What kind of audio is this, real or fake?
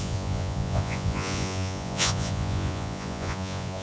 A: fake